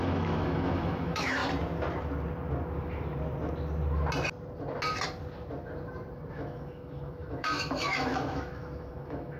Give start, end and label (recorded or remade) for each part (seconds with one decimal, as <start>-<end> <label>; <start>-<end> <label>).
0.0-1.4 remade; 1.4-6.3 recorded; 6.3-9.4 remade